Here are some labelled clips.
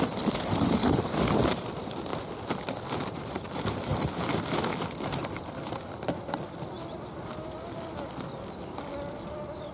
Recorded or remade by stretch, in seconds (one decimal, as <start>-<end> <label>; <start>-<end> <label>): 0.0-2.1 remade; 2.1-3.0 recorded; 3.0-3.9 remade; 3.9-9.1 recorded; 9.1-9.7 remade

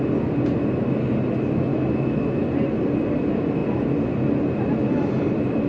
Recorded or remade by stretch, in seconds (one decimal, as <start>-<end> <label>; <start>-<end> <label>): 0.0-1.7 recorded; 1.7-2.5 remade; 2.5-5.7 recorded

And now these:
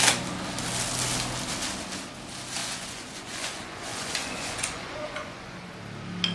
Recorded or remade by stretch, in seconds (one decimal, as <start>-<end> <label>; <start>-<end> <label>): 0.0-2.6 recorded; 2.6-5.7 remade; 5.7-6.3 recorded

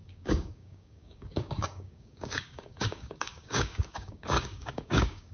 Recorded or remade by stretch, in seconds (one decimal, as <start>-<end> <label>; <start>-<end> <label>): 0.0-5.3 remade

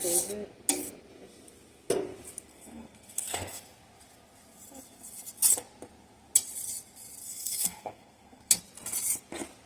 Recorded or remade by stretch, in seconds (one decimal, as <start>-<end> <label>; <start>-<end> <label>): 0.0-2.5 recorded; 2.5-3.6 remade; 3.6-7.2 recorded; 7.2-8.6 remade; 8.6-9.7 recorded